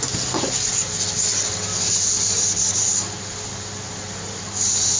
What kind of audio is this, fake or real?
fake